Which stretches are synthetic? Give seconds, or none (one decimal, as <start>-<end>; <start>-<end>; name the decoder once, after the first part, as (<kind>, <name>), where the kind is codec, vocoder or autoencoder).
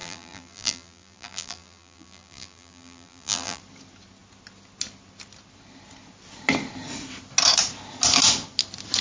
0.0-3.6 (vocoder, BigVGAN v2)